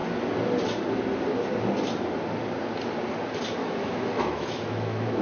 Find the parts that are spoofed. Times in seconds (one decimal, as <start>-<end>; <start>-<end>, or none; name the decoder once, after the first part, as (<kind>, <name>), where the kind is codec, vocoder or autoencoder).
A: 3.6-5.2 (autoencoder, DAC-VAE)